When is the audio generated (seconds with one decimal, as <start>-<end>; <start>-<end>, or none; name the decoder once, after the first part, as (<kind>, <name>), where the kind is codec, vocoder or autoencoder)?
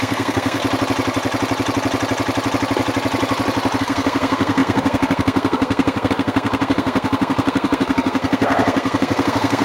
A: 0.0-0.6 (codec, SNAC); 3.8-9.6